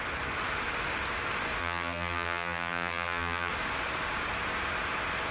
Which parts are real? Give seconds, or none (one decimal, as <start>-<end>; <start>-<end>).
0.0-1.6; 3.5-5.3